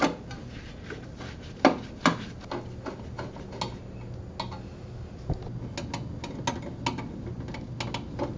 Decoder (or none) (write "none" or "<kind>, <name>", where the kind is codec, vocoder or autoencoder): none